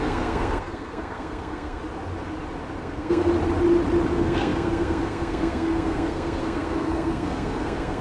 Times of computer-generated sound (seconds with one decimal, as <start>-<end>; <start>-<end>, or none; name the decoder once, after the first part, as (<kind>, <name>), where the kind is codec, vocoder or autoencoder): 0.0-1.8 (codec, SNAC); 2.8-3.3; 4.1-8.0